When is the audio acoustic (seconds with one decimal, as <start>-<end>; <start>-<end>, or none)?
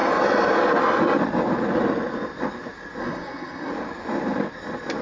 0.0-3.0; 3.7-5.0